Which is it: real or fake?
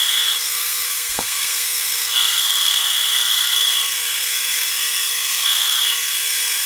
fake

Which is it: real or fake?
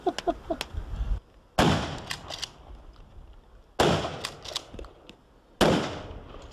real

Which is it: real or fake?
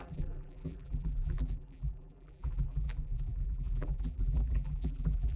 fake